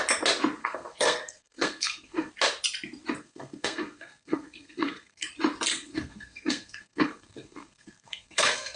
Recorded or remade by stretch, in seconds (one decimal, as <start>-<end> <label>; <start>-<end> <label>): 0.0-0.6 recorded; 0.6-2.3 remade; 2.3-3.2 recorded; 3.2-5.3 remade; 5.3-5.7 recorded; 5.7-8.8 remade